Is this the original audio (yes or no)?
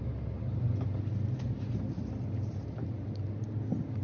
yes